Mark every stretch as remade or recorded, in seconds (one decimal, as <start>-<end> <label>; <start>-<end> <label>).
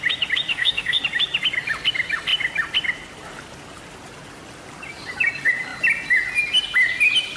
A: 0.0-0.5 recorded; 0.5-1.0 remade; 1.0-7.4 recorded